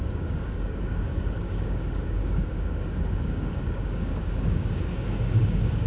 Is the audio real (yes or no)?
no